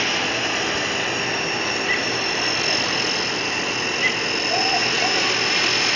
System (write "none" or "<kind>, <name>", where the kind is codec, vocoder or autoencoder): none